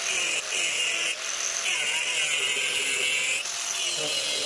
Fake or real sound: real